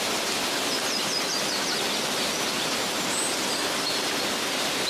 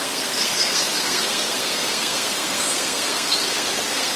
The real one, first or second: first